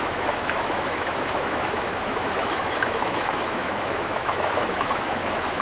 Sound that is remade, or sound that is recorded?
remade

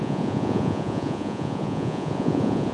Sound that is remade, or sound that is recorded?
remade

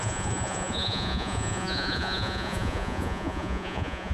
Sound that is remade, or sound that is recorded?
remade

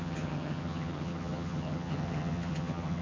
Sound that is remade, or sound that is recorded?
remade